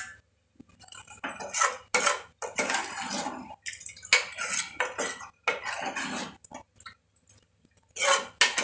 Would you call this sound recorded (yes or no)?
yes